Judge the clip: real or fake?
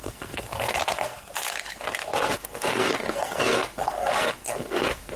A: fake